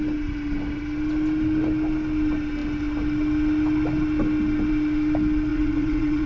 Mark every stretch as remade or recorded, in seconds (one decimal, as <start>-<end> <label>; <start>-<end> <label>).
0.0-5.5 recorded; 5.5-6.3 remade